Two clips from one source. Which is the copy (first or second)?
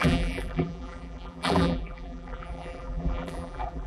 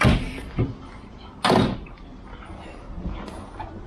first